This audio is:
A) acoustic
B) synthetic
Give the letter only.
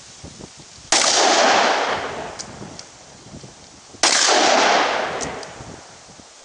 A